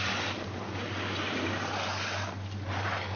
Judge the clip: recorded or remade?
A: recorded